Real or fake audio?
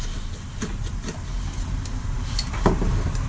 fake